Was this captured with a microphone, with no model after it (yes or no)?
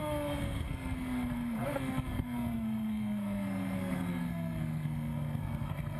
no